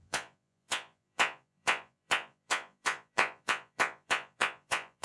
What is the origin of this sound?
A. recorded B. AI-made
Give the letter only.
B